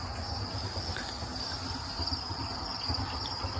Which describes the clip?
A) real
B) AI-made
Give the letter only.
A